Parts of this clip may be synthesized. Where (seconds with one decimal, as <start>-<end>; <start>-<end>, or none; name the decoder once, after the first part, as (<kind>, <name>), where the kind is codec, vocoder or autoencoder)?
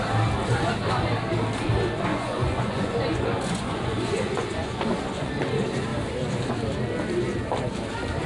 2.1-5.3 (vocoder, Vocos)